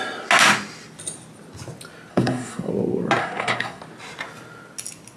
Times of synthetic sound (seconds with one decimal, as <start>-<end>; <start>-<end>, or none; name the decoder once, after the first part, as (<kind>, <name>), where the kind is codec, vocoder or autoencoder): 2.1-2.7 (codec, SNAC); 3.2-3.8